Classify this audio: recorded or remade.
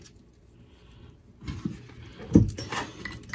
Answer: recorded